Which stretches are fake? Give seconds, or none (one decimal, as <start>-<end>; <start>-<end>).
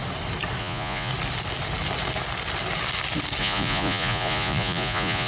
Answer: 0.6-1.1; 3.4-5.3